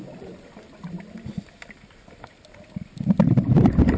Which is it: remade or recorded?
recorded